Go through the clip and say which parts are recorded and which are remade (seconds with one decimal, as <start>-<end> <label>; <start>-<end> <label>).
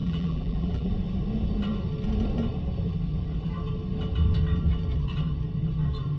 0.0-0.9 remade; 0.9-6.2 recorded